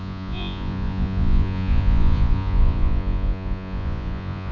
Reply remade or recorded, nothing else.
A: remade